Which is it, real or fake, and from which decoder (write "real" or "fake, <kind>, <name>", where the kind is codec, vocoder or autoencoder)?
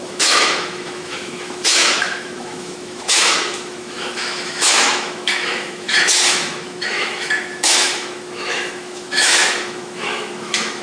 fake, autoencoder, DAC-VAE